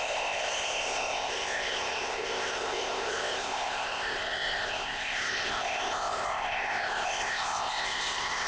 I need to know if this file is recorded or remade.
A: remade